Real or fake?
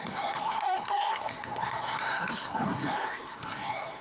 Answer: fake